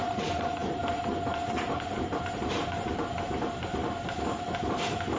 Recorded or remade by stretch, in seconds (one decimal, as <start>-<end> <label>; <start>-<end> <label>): 0.0-5.2 recorded